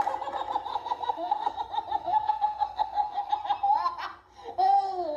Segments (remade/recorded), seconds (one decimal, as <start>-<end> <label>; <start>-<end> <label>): 0.0-0.7 recorded; 0.7-1.6 remade; 1.6-2.0 recorded; 2.0-3.3 remade; 3.3-5.2 recorded